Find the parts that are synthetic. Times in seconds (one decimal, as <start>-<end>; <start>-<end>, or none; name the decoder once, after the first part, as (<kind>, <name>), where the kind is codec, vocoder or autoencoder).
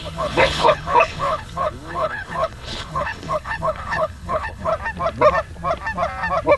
0.0-4.7 (codec, HILCodec)